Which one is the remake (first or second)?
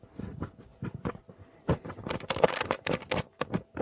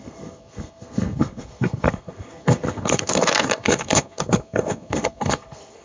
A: second